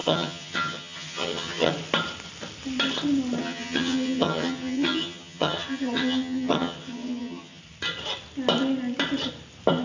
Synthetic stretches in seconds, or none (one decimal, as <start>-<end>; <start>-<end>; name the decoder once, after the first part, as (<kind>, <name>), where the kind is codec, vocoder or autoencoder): 0.0-1.7 (vocoder, HiFi-GAN); 3.4-7.6